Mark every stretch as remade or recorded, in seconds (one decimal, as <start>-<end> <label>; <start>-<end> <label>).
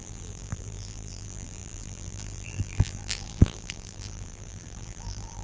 0.0-5.4 remade